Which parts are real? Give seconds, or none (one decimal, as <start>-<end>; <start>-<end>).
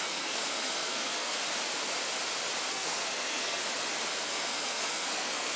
1.4-2.7; 3.6-4.1